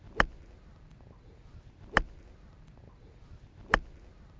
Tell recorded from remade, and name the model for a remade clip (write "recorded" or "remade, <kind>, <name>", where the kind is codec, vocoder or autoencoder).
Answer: recorded